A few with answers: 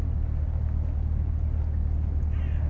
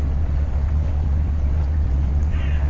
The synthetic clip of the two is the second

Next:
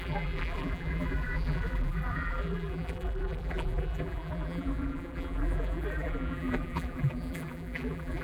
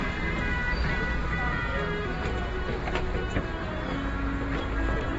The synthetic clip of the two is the first